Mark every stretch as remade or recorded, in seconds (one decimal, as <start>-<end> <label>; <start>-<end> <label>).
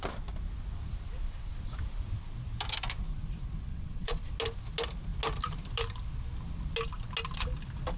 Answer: 0.0-3.7 recorded; 3.7-4.3 remade; 4.3-8.0 recorded